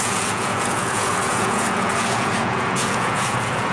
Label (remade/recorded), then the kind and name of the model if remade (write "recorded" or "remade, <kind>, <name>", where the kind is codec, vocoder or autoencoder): remade, vocoder, Vocos